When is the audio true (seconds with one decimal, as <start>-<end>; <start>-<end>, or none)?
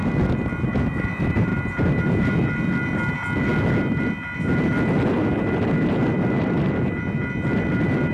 0.0-8.1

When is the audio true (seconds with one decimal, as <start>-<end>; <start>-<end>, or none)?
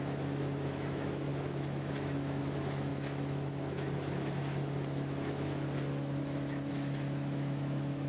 none